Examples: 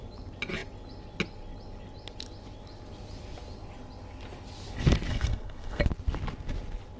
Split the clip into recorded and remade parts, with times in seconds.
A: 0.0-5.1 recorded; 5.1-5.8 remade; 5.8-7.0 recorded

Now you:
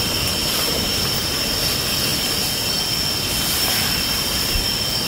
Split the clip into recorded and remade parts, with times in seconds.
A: 0.0-0.4 recorded; 0.4-1.0 remade; 1.0-5.1 recorded